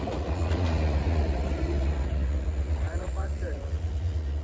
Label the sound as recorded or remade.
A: remade